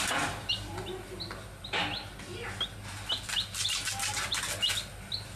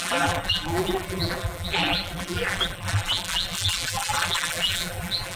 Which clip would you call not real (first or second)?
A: second